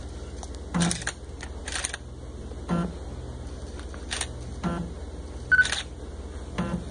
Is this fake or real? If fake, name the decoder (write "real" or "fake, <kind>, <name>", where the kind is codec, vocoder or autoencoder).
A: real